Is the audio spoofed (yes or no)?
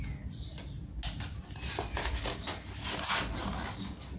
no